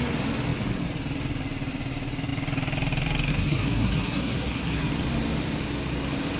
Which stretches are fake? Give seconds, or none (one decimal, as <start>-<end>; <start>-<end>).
3.3-4.9

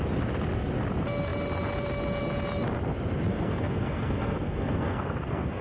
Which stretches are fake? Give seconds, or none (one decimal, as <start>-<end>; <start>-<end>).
3.3-5.6

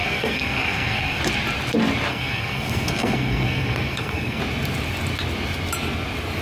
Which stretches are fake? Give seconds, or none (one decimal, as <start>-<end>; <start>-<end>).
0.0-1.2; 2.1-4.4

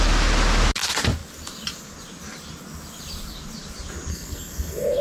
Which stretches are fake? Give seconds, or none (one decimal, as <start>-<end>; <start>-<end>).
4.1-5.0